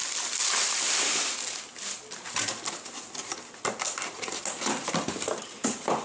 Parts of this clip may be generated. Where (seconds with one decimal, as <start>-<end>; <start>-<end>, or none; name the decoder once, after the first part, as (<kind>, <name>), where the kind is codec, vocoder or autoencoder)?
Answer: none